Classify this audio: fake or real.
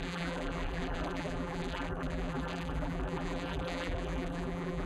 fake